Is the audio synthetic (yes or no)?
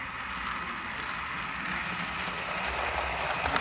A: no